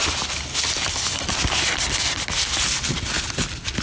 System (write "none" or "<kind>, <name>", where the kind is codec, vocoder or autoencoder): none